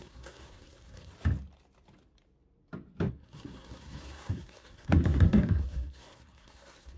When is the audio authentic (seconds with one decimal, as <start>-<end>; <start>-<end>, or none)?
1.1-3.1